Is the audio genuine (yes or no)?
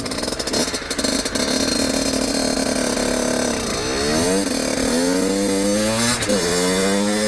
yes